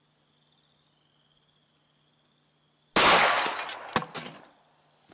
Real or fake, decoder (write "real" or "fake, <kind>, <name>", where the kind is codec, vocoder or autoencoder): real